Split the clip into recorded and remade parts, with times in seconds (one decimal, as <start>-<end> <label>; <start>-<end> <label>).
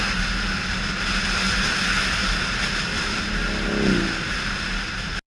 0.0-5.3 recorded